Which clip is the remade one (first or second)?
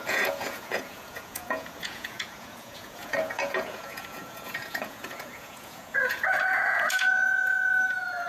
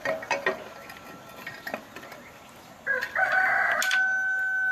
first